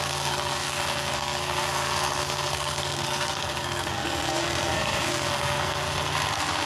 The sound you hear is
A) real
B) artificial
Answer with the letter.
B